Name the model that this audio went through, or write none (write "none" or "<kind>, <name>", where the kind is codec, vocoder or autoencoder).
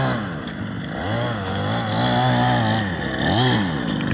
none